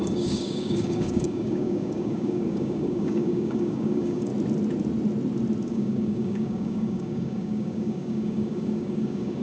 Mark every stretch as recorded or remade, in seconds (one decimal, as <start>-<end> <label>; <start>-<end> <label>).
0.0-4.3 remade; 4.3-5.7 recorded; 5.7-9.4 remade